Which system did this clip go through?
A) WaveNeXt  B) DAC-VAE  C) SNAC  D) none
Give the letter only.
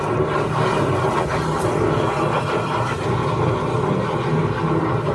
D